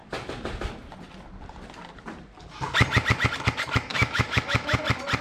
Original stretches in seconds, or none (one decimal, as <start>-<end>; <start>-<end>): 0.0-3.9; 4.8-5.2

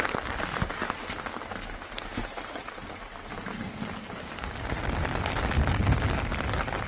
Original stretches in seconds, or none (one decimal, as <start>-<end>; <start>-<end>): 0.0-6.9